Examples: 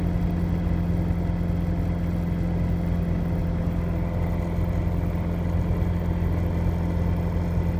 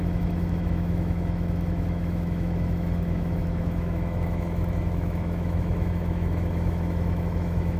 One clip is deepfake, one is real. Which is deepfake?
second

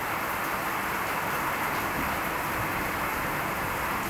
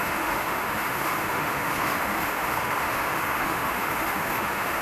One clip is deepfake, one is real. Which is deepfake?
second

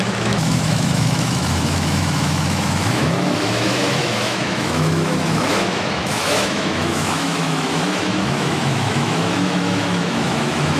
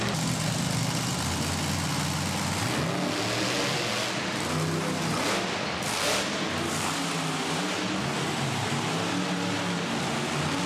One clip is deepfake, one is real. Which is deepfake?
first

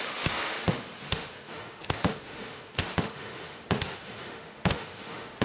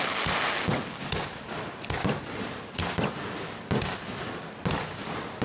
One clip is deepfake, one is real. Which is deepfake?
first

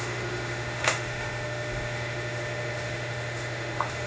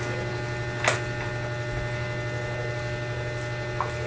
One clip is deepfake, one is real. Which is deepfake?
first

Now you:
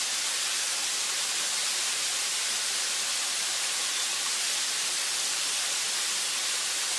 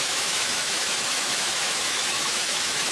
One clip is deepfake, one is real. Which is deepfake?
second